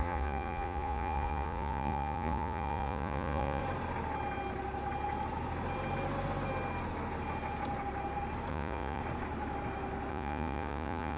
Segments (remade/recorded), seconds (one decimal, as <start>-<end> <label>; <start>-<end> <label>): 0.0-3.6 remade; 3.6-8.5 recorded; 8.5-9.0 remade; 9.0-10.1 recorded; 10.1-11.2 remade